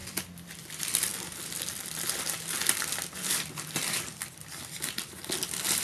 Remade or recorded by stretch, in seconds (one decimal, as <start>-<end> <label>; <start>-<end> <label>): 0.0-1.1 recorded; 1.1-4.6 remade; 4.6-5.8 recorded